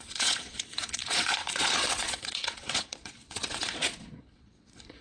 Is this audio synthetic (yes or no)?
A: yes